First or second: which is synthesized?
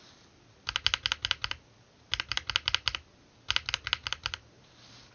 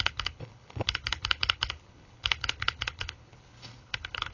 second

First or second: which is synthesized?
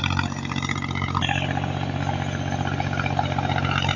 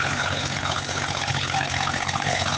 second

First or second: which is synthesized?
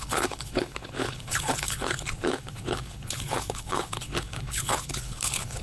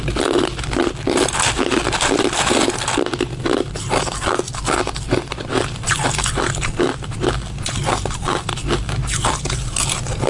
first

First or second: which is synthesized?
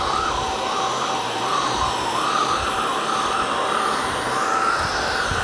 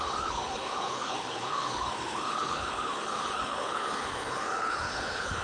second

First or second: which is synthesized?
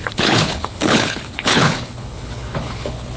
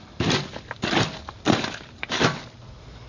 first